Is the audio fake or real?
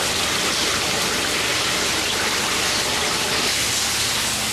real